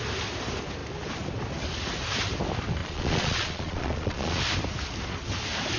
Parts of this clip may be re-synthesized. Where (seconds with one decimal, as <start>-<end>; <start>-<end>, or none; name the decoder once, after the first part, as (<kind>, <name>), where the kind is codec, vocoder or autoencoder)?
2.8-4.4 (vocoder, Vocos)